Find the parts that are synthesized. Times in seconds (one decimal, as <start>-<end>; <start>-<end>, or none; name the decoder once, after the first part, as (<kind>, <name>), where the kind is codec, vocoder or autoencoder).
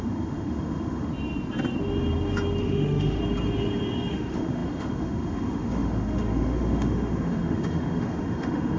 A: 0.0-1.1 (autoencoder, DAC-VAE); 2.6-3.2; 4.1-8.8